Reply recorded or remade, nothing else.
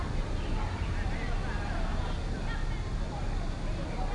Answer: recorded